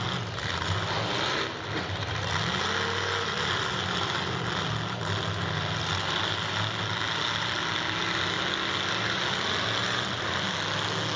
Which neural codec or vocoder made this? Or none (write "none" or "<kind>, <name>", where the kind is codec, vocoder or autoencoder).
none